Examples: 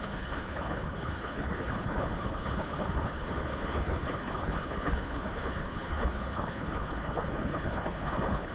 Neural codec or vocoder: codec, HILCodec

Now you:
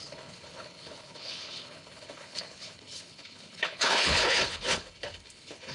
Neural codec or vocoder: codec, HILCodec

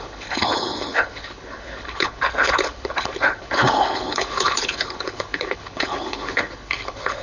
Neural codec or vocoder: codec, HILCodec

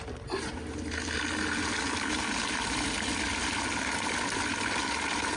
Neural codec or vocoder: none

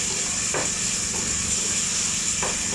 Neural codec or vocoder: none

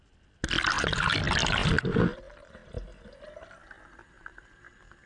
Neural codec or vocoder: none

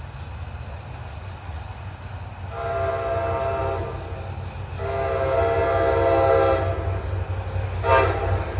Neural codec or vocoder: none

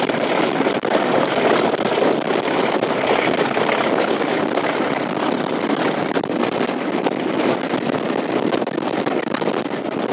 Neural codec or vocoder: none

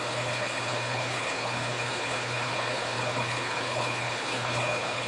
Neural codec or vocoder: codec, HILCodec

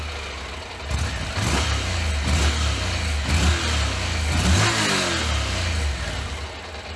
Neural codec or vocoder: none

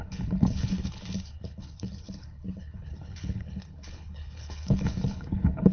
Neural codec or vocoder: codec, HILCodec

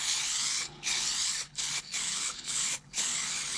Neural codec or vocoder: codec, HILCodec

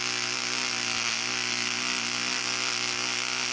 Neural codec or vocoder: none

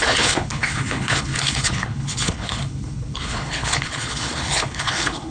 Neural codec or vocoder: codec, HILCodec